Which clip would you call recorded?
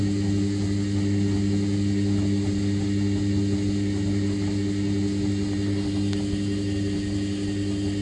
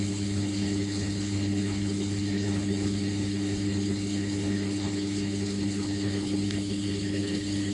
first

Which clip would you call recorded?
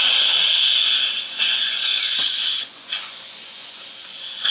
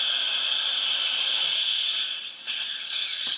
second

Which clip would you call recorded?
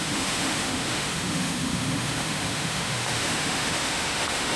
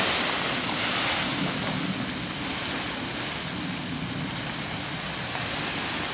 second